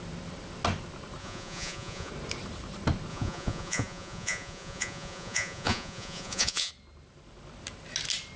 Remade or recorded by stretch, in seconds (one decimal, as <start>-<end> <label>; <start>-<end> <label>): 0.0-1.2 recorded; 1.2-2.1 remade; 2.1-3.1 recorded; 3.1-6.7 remade; 6.7-8.4 recorded